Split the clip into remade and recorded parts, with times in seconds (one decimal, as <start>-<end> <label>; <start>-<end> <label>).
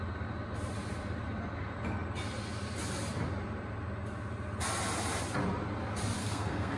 0.0-6.2 recorded; 6.2-6.8 remade